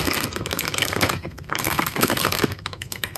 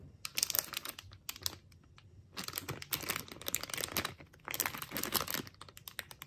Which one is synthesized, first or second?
first